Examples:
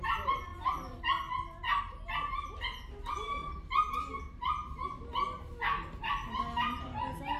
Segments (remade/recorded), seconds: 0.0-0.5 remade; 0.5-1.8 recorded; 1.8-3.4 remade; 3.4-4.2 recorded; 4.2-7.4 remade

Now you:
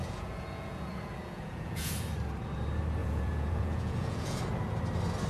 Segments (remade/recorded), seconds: 0.0-1.9 remade; 1.9-3.0 recorded; 3.0-4.4 remade; 4.4-5.3 recorded

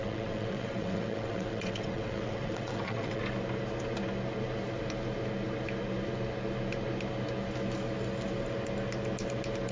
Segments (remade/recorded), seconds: 0.0-3.2 remade; 3.2-9.7 recorded